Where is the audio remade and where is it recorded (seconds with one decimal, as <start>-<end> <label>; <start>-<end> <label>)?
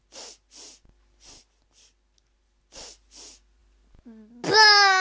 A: 0.0-5.0 recorded